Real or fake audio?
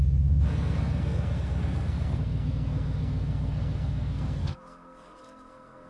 fake